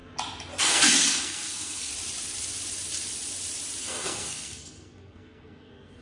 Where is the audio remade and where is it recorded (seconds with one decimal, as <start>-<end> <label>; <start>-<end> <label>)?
0.0-0.6 recorded; 0.6-1.9 remade; 1.9-3.8 recorded; 3.8-6.0 remade